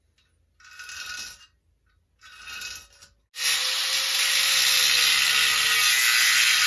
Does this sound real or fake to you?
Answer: real